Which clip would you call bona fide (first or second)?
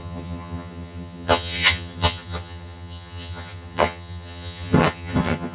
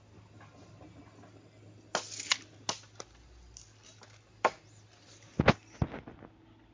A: second